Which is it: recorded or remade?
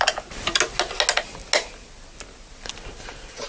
recorded